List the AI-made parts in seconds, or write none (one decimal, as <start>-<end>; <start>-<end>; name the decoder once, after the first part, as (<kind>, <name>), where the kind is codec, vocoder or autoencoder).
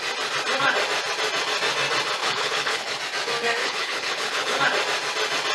2.2-3.0 (codec, HILCodec); 3.6-4.6